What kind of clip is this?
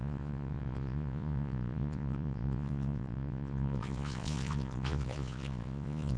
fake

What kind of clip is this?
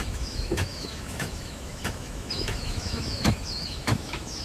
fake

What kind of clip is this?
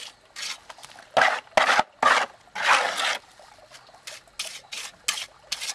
real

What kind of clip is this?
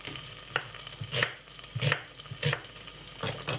real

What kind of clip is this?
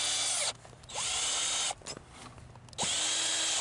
real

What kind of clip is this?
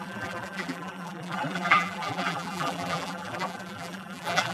fake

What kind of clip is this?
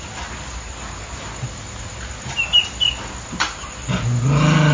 real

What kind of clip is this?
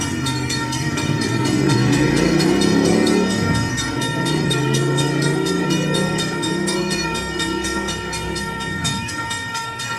fake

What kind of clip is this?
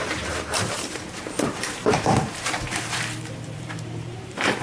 fake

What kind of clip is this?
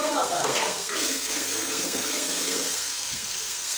fake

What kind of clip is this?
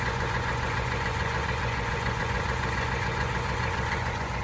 fake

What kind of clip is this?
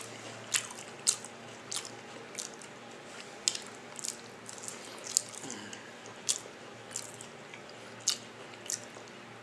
real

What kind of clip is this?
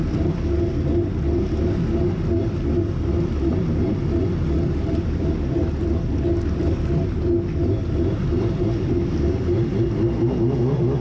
real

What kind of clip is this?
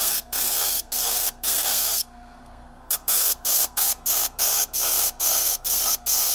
fake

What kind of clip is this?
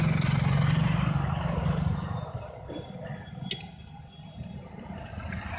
real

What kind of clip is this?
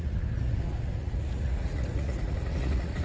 fake